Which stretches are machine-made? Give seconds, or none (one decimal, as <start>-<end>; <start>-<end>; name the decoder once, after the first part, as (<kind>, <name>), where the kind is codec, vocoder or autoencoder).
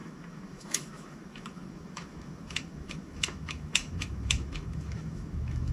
0.0-5.7 (autoencoder, DAC-VAE)